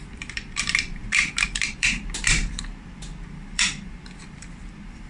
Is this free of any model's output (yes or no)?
no